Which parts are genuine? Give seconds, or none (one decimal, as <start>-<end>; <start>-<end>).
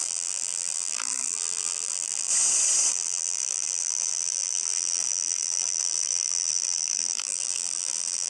2.3-2.9